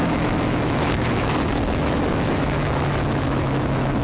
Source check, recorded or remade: remade